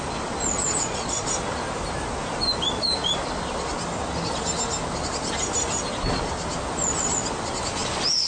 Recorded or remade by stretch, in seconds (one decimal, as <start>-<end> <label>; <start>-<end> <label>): 0.0-0.6 recorded; 0.6-1.3 remade; 1.3-8.3 recorded